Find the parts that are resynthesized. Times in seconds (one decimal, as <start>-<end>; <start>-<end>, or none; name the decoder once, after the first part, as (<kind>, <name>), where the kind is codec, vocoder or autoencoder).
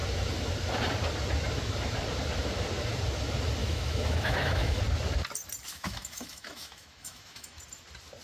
3.6-4.8 (autoencoder, DAC-VAE); 5.7-7.6